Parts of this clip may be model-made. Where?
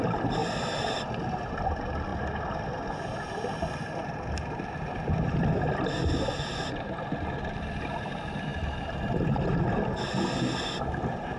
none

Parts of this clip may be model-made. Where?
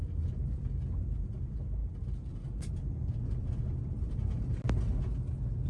none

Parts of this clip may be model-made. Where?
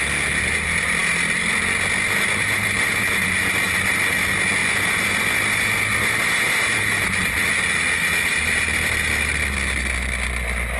none